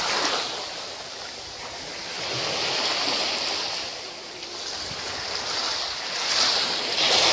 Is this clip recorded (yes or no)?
yes